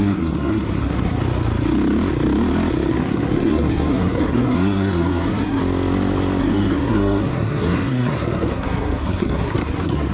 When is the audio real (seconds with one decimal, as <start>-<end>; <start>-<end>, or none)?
1.2-2.9; 5.6-6.4